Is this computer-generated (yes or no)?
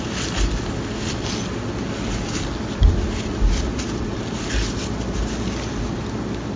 no